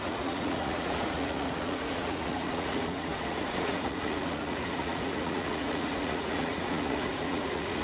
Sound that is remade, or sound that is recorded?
remade